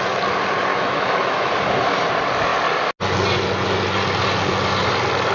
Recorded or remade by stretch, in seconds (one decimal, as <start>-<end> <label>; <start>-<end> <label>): 0.0-0.7 recorded; 0.7-1.5 remade; 1.5-5.3 recorded